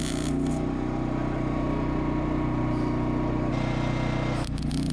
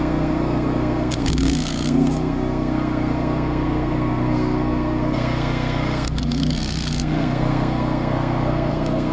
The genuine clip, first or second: first